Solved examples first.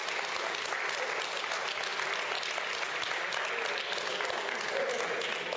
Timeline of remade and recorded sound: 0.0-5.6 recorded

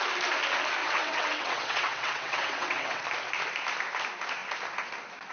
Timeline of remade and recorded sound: 0.0-0.8 recorded; 0.8-3.0 remade; 3.0-5.3 recorded

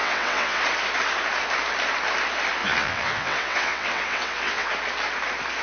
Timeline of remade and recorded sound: 0.0-0.6 remade; 0.6-2.6 recorded; 2.6-4.7 remade; 4.7-5.6 recorded